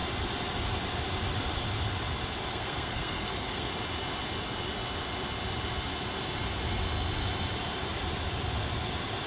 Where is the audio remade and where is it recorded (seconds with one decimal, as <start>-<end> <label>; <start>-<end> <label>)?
0.0-2.5 recorded; 2.5-3.7 remade; 3.7-9.3 recorded